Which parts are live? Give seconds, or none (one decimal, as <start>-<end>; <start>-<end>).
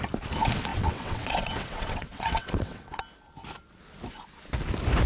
0.0-0.7; 3.0-5.1